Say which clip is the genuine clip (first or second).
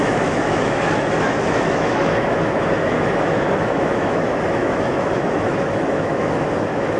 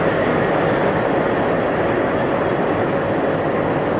second